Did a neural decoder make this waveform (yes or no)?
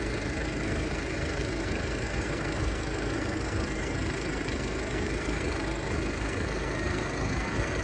yes